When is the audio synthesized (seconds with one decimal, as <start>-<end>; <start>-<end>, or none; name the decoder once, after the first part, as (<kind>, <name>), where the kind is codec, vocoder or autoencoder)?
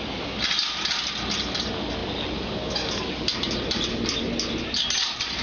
none